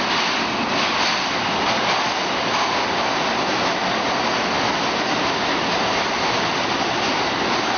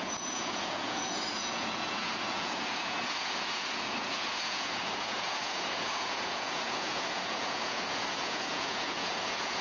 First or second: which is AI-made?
second